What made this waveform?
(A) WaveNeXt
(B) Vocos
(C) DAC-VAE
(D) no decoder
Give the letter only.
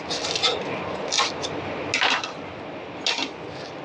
D